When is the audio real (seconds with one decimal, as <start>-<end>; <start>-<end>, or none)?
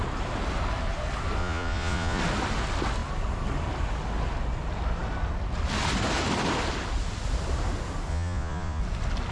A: 0.0-1.4; 2.2-8.1; 8.8-9.3